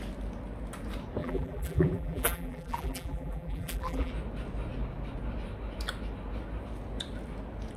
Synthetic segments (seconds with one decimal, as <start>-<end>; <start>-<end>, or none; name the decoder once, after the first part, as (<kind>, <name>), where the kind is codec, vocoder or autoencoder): 1.2-4.1 (vocoder, BigVGAN v2)